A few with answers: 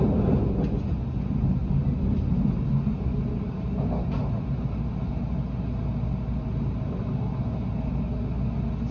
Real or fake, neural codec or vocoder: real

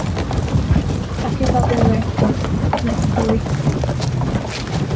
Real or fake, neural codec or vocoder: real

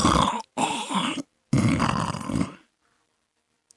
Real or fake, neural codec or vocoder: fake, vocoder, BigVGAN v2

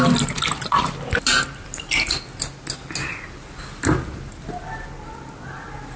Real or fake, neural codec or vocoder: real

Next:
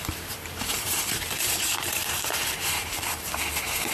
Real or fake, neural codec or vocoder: fake, vocoder, BigVGAN v2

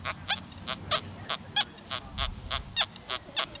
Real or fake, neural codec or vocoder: real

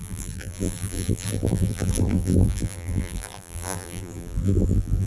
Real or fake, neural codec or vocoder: fake, vocoder, BigVGAN v2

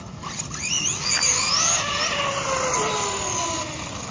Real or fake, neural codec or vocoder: real